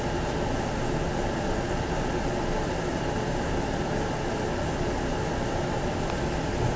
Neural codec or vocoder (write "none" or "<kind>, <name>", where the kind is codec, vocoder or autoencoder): none